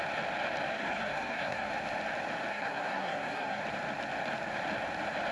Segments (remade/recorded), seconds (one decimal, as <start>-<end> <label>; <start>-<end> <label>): 0.0-0.7 recorded; 0.7-1.7 remade; 1.7-2.5 recorded; 2.5-3.6 remade; 3.6-5.3 recorded